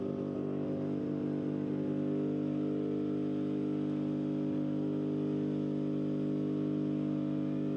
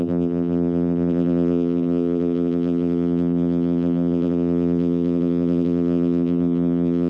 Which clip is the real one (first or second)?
first